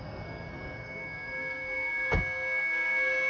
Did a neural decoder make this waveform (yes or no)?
yes